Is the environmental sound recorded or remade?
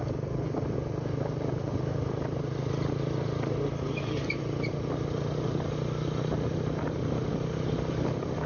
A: recorded